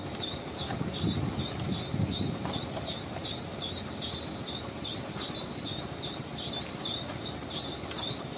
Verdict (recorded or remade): recorded